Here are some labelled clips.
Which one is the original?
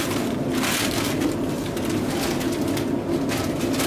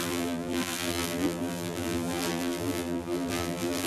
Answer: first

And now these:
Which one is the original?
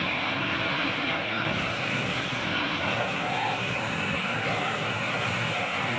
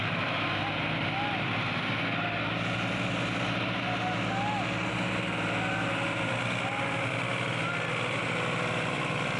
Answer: second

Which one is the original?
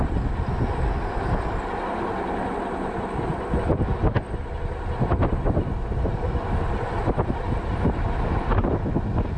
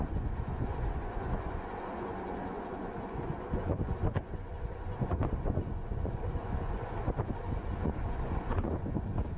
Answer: first